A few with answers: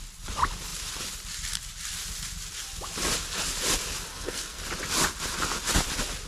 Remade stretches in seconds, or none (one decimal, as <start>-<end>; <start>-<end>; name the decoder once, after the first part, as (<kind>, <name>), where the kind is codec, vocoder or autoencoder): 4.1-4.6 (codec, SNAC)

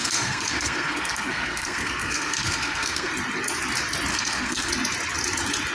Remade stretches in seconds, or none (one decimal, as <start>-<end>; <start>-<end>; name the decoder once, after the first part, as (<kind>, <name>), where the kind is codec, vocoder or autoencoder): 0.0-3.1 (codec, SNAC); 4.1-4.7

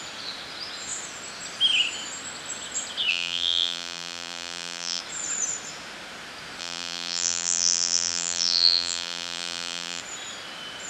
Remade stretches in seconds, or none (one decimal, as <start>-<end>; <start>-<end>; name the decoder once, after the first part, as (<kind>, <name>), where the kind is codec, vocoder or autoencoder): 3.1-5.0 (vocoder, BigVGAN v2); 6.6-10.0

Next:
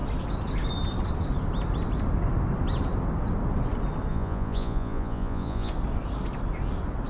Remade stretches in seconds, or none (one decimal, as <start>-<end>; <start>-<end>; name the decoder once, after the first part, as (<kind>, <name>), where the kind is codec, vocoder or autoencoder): 4.1-5.7 (vocoder, Vocos)

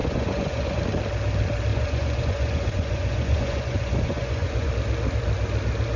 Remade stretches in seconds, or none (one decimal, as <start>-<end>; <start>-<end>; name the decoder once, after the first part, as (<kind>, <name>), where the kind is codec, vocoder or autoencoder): 0.0-0.8 (vocoder, Vocos); 1.7-4.7

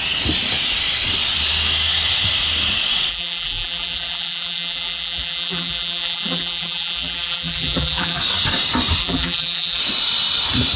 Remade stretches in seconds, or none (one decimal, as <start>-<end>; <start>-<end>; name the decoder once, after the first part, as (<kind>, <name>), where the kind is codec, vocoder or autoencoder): 3.1-8.2 (vocoder, BigVGAN v2); 9.0-9.8

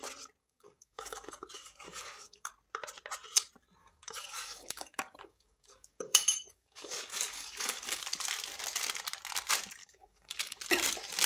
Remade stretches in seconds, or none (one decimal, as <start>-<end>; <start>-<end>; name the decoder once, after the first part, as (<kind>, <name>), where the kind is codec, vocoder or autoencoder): 0.4-2.5 (codec, DAC); 3.8-8.0; 9.8-10.6

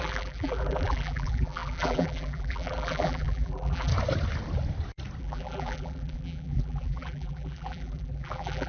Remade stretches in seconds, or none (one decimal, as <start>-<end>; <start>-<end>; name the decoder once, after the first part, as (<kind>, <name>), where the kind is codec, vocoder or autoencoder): 0.0-3.9 (vocoder, BigVGAN v2); 5.2-8.7